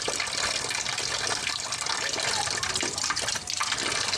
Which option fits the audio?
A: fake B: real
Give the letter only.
B